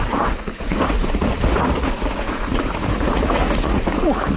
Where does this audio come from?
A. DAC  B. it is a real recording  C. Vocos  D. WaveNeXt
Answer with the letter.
C